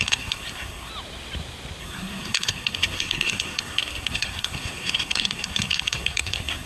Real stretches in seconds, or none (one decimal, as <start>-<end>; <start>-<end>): 0.9-1.8

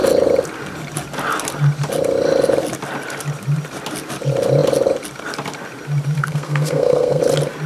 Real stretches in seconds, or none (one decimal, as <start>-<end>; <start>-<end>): 0.0-6.2; 7.2-7.7

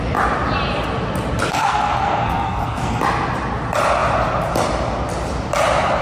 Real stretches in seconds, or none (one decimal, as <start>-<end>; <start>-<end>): 0.0-1.5; 3.0-6.0